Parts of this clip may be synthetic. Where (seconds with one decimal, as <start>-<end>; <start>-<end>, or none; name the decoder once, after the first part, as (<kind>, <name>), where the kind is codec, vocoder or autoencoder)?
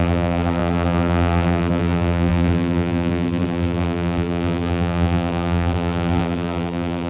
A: 0.0-7.1 (vocoder, BigVGAN v2)